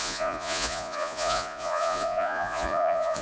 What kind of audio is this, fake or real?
fake